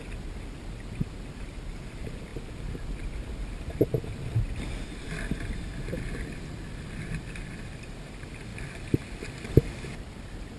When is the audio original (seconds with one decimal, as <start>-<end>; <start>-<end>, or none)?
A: 0.0-10.6